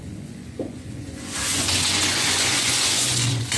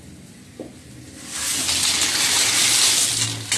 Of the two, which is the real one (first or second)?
second